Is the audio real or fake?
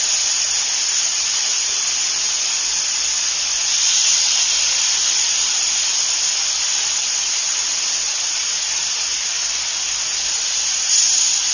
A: real